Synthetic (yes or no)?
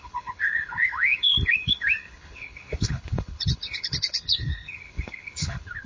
yes